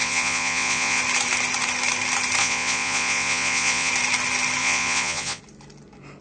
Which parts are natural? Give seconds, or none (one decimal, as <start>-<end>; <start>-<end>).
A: 1.0-2.4; 3.9-4.6; 5.4-6.2